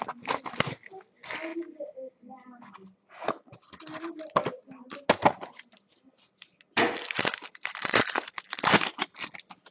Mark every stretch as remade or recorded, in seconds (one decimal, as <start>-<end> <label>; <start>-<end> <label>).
0.0-9.7 recorded